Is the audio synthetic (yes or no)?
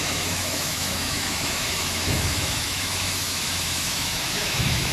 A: yes